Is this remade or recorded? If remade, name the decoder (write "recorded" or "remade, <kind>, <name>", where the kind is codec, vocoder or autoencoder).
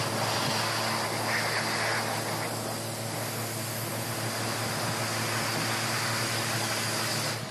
recorded